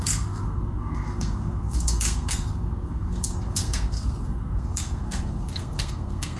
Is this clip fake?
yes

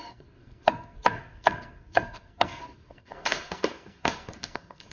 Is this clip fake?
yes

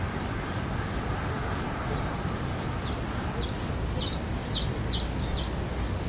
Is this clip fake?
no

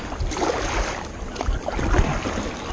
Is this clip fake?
no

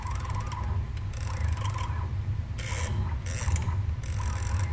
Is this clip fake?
no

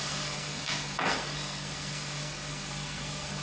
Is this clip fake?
yes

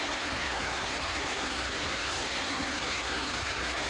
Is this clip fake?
yes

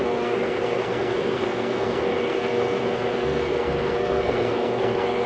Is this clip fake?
yes